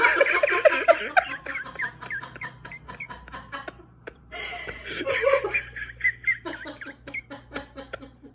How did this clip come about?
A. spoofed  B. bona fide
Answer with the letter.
A